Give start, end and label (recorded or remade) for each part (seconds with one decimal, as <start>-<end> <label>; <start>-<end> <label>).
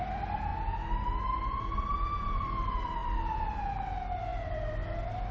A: 0.0-5.3 recorded